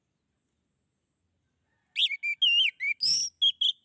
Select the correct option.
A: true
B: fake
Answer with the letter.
A